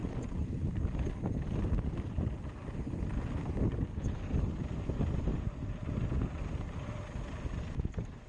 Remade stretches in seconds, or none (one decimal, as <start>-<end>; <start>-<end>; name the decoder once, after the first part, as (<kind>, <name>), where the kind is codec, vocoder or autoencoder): none